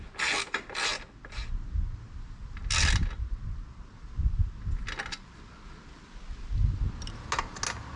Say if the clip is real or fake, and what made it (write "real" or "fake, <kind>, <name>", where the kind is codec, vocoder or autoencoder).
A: real